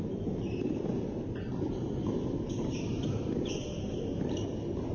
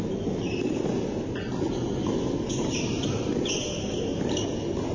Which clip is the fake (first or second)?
first